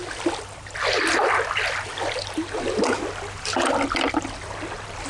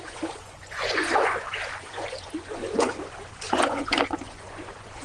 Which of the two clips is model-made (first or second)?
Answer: second